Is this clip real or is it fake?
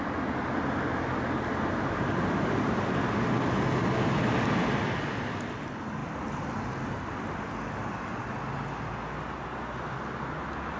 real